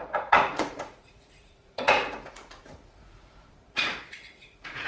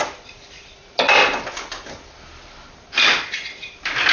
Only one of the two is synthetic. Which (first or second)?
first